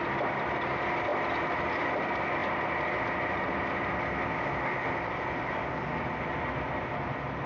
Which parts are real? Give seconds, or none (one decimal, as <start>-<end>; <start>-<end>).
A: 0.0-7.5